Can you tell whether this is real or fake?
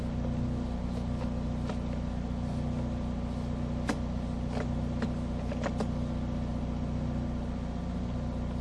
real